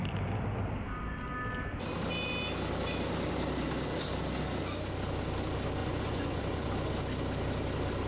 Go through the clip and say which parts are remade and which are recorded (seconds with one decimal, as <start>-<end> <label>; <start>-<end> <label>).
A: 0.0-5.8 recorded; 5.8-6.7 remade; 6.7-8.1 recorded